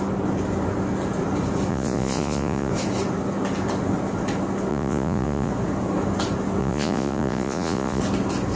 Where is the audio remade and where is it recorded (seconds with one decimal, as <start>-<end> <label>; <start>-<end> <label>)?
0.0-1.7 recorded; 1.7-2.7 remade; 2.7-4.7 recorded; 4.7-5.5 remade; 5.5-6.6 recorded; 6.6-8.0 remade; 8.0-8.6 recorded